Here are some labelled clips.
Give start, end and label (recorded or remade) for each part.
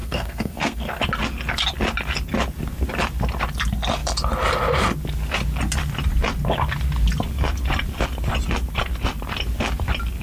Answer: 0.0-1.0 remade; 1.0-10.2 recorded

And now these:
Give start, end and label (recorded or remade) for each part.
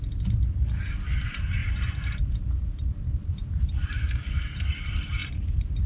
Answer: 0.0-5.9 recorded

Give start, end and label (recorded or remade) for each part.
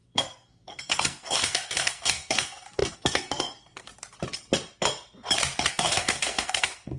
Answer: 0.0-3.9 remade; 3.9-5.7 recorded; 5.7-7.0 remade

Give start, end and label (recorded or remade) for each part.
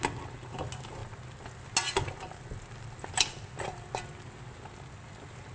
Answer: 0.0-5.5 recorded